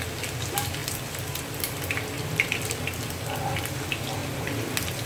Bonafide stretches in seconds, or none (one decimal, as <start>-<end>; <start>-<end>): 0.0-0.8; 1.4-5.1